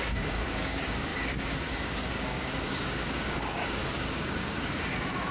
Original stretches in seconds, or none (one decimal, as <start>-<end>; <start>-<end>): none